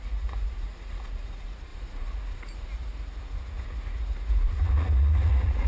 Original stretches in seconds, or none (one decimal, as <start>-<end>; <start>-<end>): none